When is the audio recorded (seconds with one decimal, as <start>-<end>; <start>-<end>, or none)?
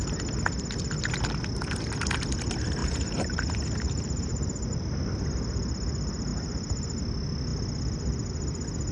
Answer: 0.0-2.8; 5.2-6.3; 7.0-8.9